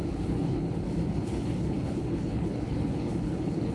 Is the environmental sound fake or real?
fake